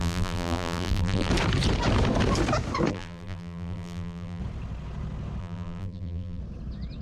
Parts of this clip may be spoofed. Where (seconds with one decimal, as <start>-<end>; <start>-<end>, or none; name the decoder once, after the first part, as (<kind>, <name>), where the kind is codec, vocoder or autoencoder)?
0.0-1.3 (vocoder, BigVGAN v2); 2.9-4.4; 5.4-6.4